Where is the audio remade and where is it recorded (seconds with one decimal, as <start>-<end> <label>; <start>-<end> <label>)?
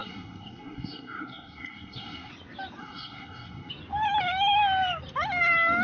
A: 0.0-2.3 remade; 2.3-2.8 recorded; 2.8-3.7 remade; 3.7-5.8 recorded